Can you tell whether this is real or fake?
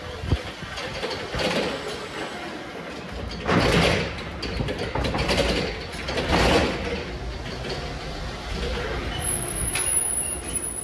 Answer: real